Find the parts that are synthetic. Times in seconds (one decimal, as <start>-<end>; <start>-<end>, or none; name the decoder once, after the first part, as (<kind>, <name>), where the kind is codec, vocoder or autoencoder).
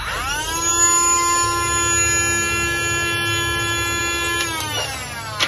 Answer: none